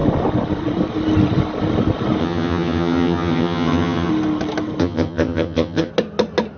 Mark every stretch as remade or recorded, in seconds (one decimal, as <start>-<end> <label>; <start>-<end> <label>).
0.0-2.2 recorded; 2.2-4.1 remade; 4.1-4.8 recorded; 4.8-5.9 remade; 5.9-6.6 recorded